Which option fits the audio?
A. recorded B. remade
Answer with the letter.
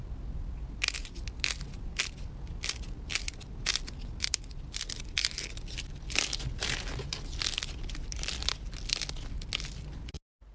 A